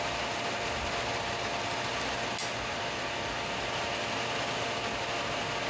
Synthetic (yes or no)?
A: no